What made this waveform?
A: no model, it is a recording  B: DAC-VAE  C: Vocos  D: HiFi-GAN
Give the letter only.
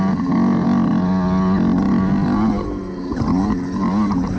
A